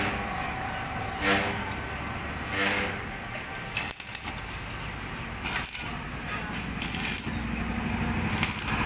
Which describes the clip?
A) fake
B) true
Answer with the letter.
B